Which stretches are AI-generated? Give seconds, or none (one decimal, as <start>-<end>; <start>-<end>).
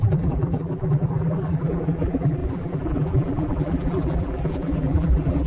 0.0-5.5